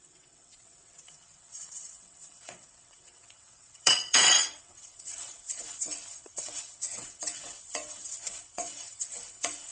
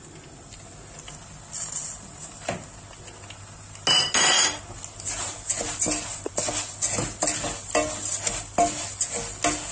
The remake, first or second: first